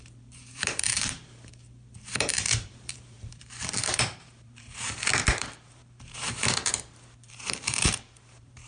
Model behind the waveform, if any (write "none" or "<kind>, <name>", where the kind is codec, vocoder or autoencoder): vocoder, BigVGAN v2